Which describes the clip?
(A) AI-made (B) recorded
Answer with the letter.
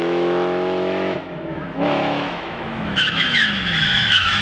A